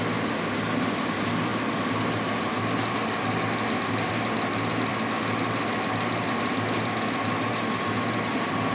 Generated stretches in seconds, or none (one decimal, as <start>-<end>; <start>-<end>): none